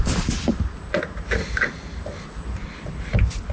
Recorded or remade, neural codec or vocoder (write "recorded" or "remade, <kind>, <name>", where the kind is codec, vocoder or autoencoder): recorded